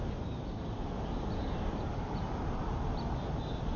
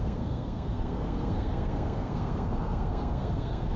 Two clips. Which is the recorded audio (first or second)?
first